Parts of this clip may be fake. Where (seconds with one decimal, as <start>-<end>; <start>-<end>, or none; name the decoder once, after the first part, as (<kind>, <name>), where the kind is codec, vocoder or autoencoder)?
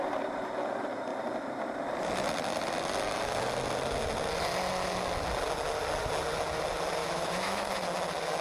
7.0-7.7 (autoencoder, DAC-VAE)